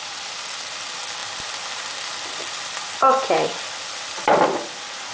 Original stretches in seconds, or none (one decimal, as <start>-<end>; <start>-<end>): 0.0-5.1